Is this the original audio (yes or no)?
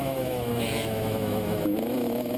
no